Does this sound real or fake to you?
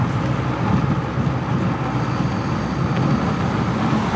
real